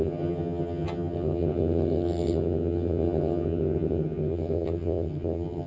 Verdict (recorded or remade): remade